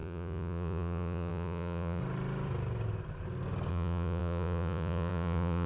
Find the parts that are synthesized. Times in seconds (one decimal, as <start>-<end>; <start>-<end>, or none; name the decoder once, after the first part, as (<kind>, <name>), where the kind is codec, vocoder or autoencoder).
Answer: 0.0-2.0 (vocoder, Vocos); 3.7-5.7

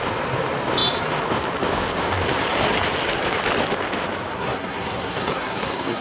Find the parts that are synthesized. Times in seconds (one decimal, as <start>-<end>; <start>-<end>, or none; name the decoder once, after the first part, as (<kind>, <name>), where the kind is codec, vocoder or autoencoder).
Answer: 4.3-6.0 (codec, SNAC)

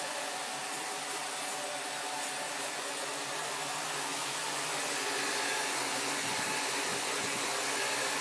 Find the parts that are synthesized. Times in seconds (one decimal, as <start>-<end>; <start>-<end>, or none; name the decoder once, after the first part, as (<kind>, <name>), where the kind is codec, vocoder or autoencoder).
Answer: 0.0-0.4 (vocoder, Vocos); 2.5-8.2

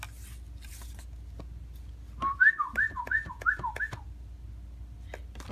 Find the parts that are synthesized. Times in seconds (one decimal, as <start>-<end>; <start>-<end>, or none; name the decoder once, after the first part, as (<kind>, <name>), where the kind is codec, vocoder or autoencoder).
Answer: 2.8-4.0 (vocoder, Vocos)

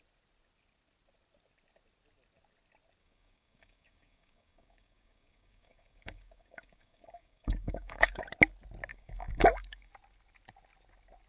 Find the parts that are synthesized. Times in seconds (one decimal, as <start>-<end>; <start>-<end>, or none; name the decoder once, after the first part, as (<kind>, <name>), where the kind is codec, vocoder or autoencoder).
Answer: 3.0-8.2 (codec, DAC); 8.9-9.9

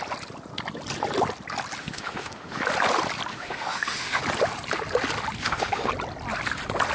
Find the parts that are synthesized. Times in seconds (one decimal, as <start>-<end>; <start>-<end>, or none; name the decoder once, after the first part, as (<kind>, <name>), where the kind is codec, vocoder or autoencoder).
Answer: 1.8-2.6 (autoencoder, DAC-VAE); 3.3-4.2; 5.4-5.9